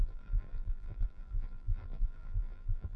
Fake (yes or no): yes